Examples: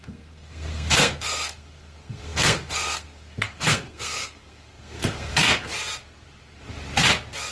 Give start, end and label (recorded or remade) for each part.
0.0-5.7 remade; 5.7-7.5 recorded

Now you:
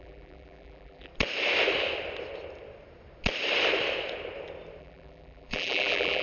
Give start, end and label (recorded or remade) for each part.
0.0-1.1 remade; 1.1-4.8 recorded; 4.8-6.2 remade

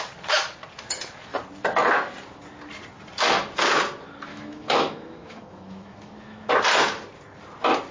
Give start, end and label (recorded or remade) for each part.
0.0-4.3 recorded; 4.3-6.5 remade; 6.5-7.9 recorded

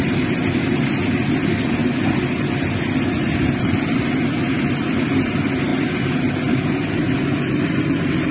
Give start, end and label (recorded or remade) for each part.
0.0-8.3 recorded

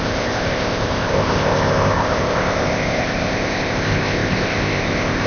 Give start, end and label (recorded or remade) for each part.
0.0-5.3 remade

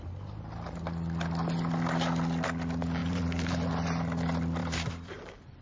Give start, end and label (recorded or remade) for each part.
0.0-3.0 recorded; 3.0-3.7 remade; 3.7-4.6 recorded; 4.6-5.6 remade

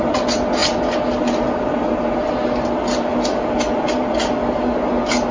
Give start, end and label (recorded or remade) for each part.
0.0-5.3 recorded